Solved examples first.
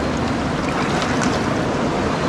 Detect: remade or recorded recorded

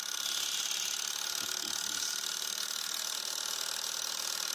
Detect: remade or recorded recorded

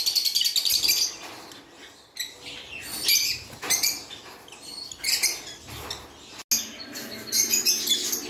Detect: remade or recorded recorded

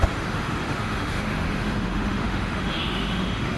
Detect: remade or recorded remade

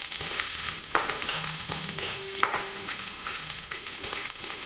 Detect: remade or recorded remade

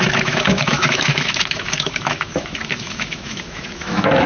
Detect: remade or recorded remade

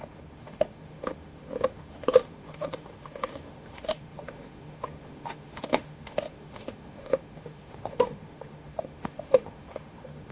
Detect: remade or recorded remade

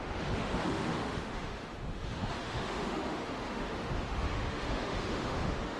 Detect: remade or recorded remade